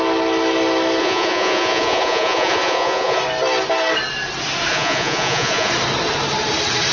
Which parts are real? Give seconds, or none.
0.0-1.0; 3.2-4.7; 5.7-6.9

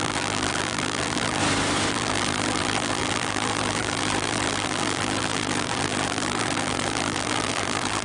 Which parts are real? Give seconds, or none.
1.4-1.9